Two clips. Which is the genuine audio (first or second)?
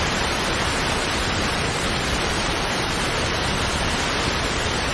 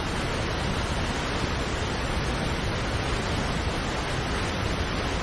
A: second